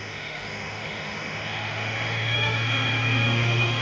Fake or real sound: fake